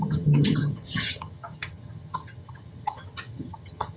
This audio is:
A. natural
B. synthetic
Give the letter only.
B